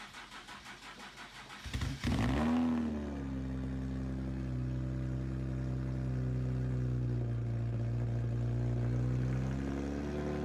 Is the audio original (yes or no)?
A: yes